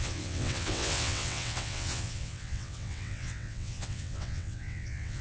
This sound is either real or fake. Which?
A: fake